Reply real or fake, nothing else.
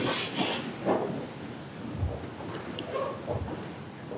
real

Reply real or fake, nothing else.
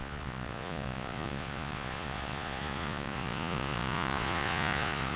fake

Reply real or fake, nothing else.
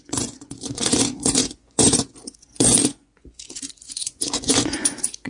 fake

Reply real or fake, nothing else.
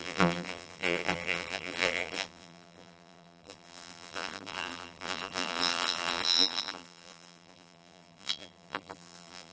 fake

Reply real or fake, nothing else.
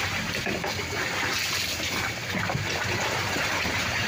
real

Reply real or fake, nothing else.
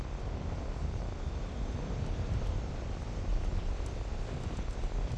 real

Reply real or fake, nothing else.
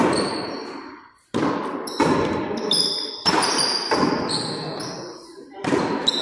real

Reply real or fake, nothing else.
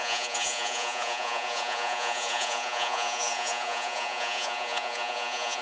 fake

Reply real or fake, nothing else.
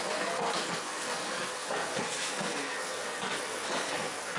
fake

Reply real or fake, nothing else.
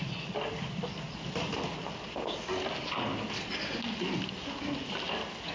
real